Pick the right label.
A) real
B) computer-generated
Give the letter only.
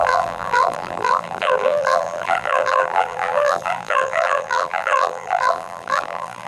B